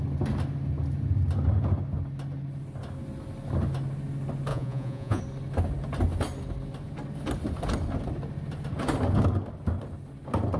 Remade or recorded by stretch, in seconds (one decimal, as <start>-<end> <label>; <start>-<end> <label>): 0.0-4.5 recorded; 4.5-5.2 remade; 5.2-10.6 recorded